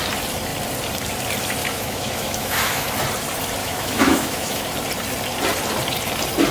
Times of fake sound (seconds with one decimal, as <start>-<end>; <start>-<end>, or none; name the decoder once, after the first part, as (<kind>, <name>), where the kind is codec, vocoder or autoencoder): 1.6-2.9 (autoencoder, DAC-VAE); 3.6-4.6